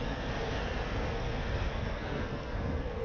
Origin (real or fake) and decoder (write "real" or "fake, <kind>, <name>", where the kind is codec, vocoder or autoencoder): fake, codec, SNAC